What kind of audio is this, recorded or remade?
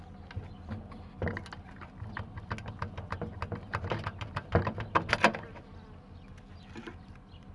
recorded